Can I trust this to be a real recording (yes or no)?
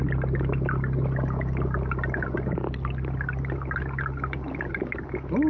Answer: yes